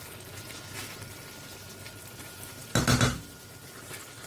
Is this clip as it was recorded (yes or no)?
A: yes